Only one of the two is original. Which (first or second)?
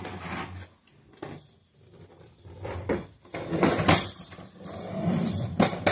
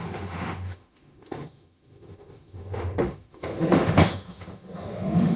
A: first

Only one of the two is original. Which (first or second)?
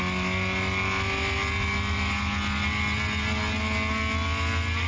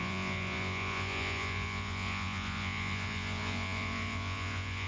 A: first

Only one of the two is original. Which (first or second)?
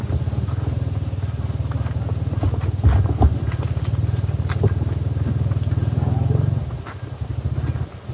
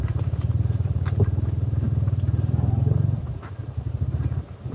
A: first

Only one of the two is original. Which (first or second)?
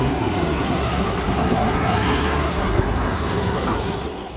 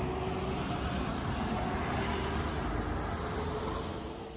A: second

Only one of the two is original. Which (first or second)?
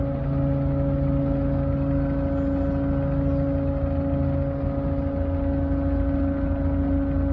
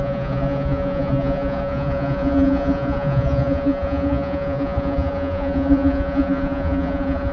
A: first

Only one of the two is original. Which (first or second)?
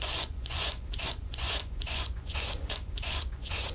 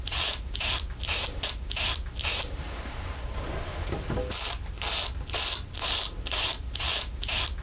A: second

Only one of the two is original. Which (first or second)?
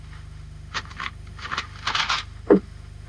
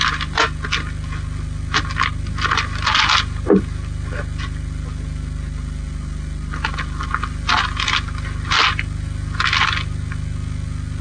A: second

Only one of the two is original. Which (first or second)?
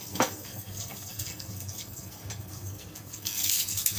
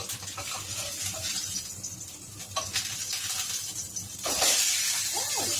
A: second